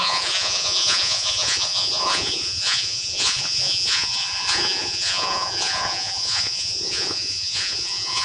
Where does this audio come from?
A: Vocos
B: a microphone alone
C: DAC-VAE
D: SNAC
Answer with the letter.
A